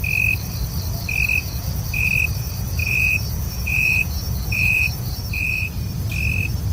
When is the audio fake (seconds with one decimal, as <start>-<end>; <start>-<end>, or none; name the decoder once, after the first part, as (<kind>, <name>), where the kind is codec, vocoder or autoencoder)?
1.4-2.1 (vocoder, Vocos); 2.8-5.7